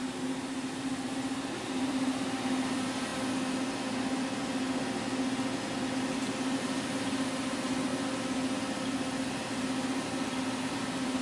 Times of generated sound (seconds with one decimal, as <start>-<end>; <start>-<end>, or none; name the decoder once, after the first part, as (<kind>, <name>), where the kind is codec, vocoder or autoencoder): 0.0-3.1 (vocoder, BigVGAN v2); 6.6-7.9; 10.6-11.2